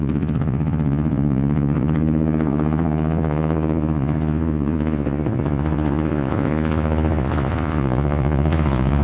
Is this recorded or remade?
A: remade